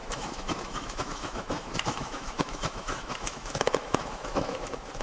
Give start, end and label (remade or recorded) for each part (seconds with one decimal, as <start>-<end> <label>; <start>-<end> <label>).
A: 0.0-5.0 remade